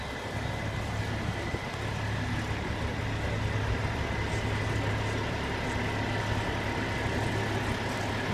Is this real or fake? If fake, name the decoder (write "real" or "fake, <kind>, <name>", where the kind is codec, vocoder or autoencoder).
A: real